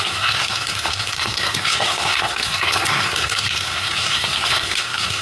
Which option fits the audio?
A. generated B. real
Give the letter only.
A